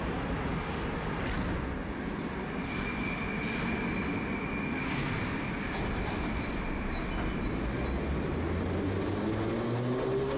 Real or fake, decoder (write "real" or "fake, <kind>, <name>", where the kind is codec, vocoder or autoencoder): real